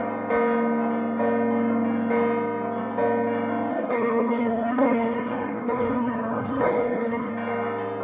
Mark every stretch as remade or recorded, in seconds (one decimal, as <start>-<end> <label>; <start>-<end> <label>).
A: 0.0-3.7 recorded; 3.7-7.3 remade; 7.3-8.0 recorded